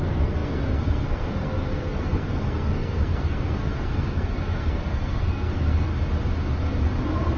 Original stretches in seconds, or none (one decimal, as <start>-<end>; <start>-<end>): 5.9-7.4